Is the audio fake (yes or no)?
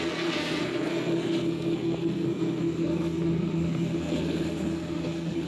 yes